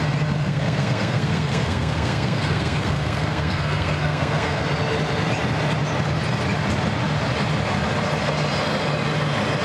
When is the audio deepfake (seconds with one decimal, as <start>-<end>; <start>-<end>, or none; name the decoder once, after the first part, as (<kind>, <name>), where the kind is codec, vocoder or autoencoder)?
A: 0.4-4.6 (codec, SNAC)